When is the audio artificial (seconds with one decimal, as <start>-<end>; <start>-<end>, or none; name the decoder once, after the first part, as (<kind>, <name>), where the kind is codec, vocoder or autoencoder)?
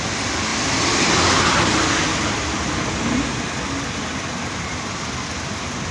none